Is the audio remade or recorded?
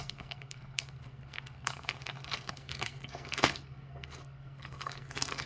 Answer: remade